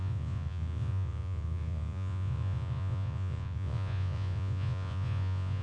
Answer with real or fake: fake